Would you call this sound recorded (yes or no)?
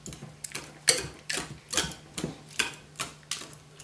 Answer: yes